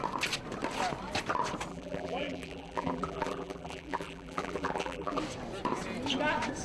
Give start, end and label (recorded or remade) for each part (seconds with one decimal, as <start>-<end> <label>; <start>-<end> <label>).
0.0-1.7 recorded; 1.7-5.2 remade; 5.2-6.6 recorded